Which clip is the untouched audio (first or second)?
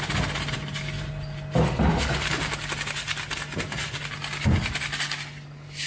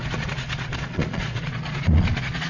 first